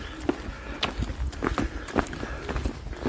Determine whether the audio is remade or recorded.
recorded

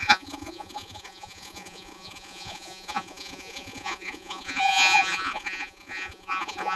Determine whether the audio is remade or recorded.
remade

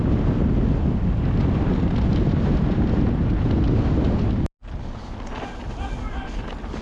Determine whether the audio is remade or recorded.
recorded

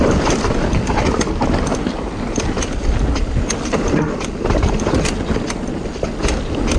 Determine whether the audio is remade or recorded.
recorded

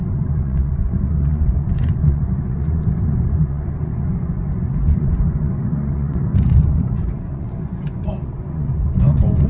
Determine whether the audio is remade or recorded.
remade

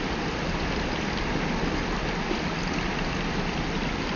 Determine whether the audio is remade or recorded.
recorded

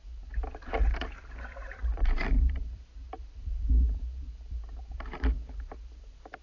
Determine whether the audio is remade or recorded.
remade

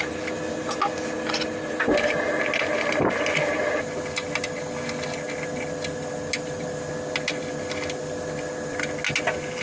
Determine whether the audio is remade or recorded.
recorded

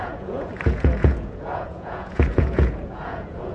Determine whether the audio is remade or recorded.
remade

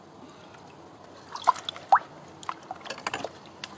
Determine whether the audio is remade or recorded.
recorded